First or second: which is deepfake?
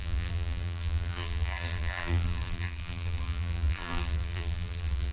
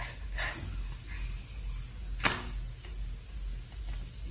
first